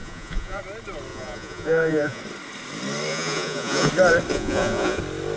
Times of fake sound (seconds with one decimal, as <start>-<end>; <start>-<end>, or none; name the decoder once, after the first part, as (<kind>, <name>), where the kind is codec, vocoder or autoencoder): 0.0-0.6 (vocoder, Vocos); 1.1-2.2; 3.1-3.9; 4.3-5.0